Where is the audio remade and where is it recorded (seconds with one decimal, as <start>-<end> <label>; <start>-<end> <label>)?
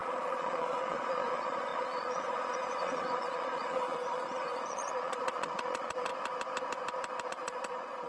0.0-6.1 remade; 6.1-7.3 recorded; 7.3-8.1 remade